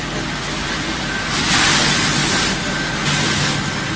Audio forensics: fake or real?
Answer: real